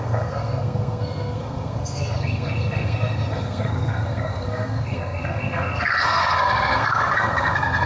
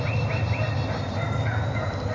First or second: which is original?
second